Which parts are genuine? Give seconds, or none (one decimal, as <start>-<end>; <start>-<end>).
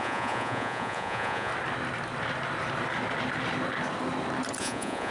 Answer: 1.5-4.6